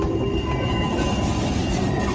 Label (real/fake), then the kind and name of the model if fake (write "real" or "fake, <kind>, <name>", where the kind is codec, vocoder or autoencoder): real